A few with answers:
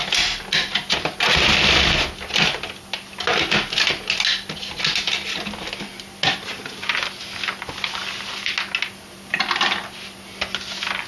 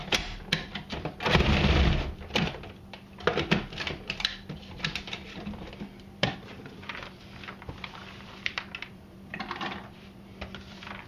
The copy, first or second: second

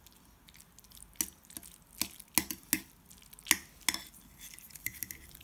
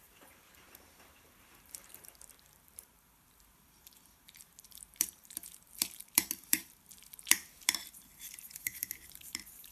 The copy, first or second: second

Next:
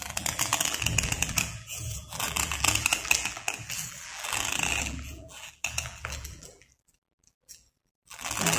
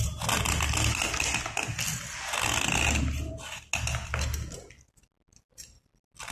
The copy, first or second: first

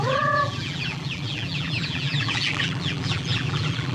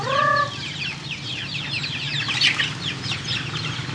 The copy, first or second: first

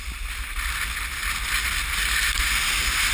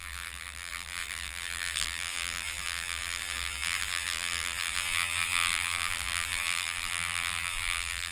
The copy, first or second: second